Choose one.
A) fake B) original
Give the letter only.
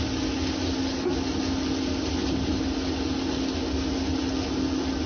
B